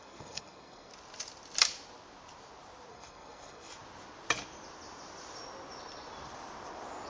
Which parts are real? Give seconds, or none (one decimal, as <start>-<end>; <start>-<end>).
0.9-2.9; 3.7-7.1